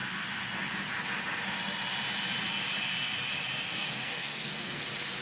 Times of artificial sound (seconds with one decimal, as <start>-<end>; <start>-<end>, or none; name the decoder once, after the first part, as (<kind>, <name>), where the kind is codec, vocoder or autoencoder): 3.7-4.8 (codec, SNAC)